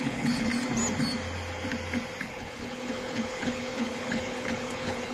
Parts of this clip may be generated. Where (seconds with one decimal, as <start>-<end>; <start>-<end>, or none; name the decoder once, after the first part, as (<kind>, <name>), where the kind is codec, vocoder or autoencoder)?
0.0-0.5 (codec, HILCodec); 2.2-5.1